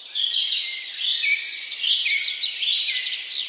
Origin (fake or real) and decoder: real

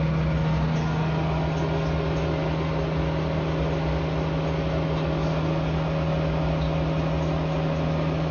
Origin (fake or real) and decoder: real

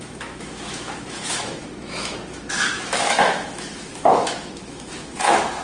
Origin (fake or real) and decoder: fake, autoencoder, DAC-VAE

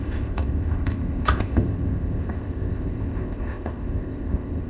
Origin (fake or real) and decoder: fake, codec, ZipCodec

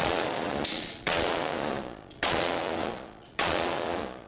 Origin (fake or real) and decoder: fake, vocoder, Vocos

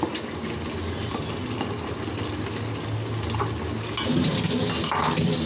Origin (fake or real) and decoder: real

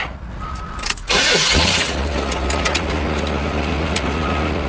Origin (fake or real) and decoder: fake, vocoder, Vocos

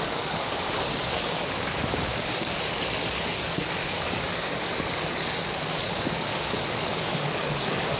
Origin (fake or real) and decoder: fake, codec, DAC